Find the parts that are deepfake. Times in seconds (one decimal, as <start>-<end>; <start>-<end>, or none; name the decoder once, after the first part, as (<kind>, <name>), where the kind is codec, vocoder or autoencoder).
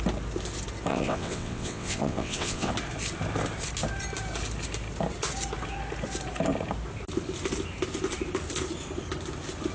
0.9-2.7 (vocoder, WaveNeXt)